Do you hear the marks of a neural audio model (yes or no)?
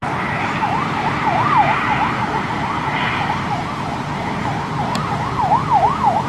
yes